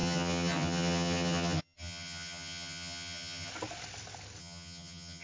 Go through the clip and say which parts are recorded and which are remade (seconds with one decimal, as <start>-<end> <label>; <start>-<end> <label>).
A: 0.0-3.5 remade; 3.5-4.4 recorded; 4.4-5.2 remade